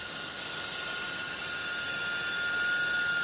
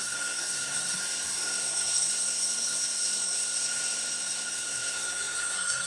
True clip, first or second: first